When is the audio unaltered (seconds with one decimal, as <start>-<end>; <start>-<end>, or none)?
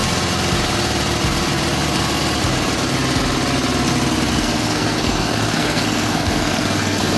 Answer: 0.0-4.3